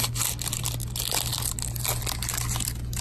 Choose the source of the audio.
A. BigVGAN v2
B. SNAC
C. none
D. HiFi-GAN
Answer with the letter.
C